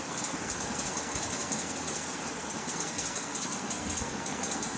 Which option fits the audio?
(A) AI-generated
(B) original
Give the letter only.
A